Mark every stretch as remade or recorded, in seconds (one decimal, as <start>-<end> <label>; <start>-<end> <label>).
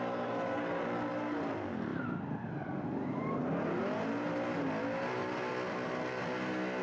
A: 0.0-6.8 recorded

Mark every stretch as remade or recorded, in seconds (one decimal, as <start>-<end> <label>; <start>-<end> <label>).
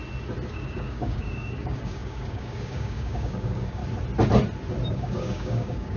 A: 0.0-0.5 recorded; 0.5-3.8 remade; 3.8-4.9 recorded; 4.9-6.0 remade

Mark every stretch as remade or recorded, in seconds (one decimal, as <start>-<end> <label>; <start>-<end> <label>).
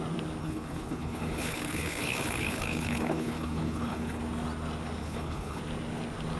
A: 0.0-0.4 recorded; 0.4-4.2 remade; 4.2-5.0 recorded; 5.0-5.6 remade; 5.6-6.4 recorded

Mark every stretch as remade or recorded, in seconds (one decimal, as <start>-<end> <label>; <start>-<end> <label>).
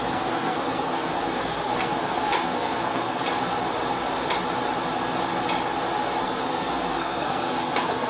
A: 0.0-3.2 remade; 3.2-6.2 recorded; 6.2-8.1 remade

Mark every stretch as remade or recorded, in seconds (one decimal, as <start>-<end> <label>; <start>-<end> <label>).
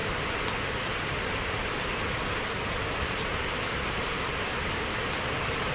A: 0.0-1.3 remade; 1.3-5.7 recorded